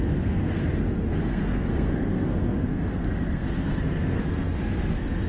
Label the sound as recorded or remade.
remade